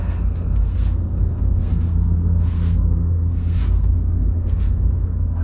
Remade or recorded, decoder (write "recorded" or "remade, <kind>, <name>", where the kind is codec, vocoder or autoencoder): remade, codec, SNAC